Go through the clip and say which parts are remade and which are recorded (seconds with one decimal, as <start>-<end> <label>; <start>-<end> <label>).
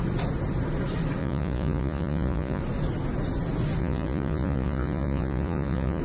0.0-1.2 recorded; 1.2-2.6 remade; 2.6-3.8 recorded; 3.8-6.0 remade